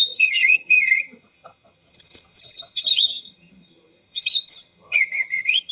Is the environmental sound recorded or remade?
remade